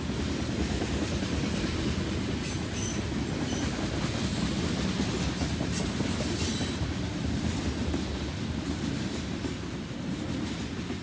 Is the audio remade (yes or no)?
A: no